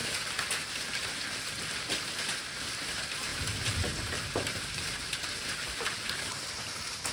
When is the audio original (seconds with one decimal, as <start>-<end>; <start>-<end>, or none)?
0.0-3.3; 6.3-7.1